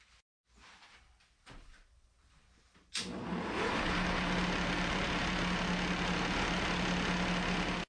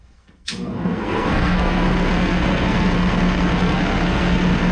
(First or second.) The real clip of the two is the first